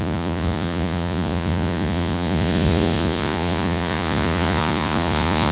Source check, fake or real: fake